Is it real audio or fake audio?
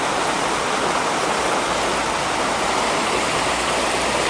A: real